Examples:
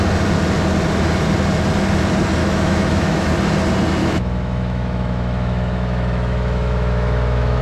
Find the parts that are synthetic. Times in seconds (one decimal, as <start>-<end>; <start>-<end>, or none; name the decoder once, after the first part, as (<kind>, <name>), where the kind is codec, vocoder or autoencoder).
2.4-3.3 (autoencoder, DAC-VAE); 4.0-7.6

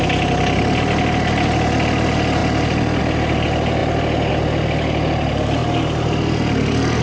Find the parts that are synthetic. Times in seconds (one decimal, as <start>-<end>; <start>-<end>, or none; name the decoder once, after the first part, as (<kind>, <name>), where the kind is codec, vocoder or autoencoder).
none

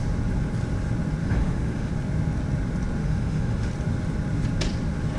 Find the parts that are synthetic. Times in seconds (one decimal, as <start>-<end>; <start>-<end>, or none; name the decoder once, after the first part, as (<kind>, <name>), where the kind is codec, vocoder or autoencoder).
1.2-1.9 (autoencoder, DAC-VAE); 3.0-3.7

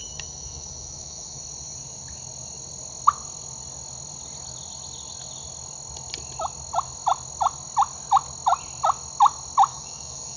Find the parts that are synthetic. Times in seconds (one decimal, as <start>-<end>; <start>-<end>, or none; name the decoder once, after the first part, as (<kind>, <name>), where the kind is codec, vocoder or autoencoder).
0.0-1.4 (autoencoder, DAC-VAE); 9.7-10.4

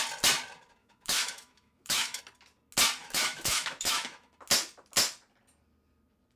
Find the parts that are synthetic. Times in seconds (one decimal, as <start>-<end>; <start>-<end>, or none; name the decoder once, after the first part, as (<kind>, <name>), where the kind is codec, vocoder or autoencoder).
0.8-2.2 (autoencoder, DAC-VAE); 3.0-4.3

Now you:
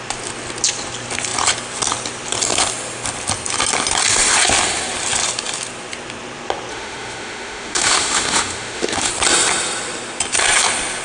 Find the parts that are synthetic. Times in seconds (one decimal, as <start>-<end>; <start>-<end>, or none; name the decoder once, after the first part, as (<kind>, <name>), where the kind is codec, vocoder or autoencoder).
6.7-9.1 (autoencoder, DAC-VAE)

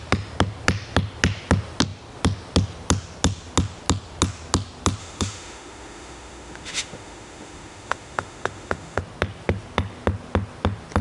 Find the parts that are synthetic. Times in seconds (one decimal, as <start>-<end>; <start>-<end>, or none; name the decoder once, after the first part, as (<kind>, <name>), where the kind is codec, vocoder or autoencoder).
5.0-9.0 (autoencoder, DAC-VAE)

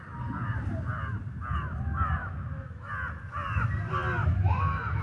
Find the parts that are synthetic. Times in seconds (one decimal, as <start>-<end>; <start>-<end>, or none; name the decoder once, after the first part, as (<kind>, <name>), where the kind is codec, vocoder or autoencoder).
2.2-2.9 (autoencoder, DAC-VAE); 4.2-5.0